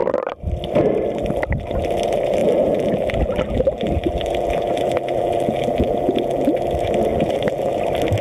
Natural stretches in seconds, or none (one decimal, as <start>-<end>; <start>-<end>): 0.0-2.4; 6.5-7.1; 7.7-8.2